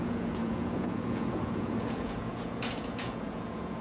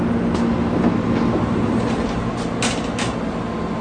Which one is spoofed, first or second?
first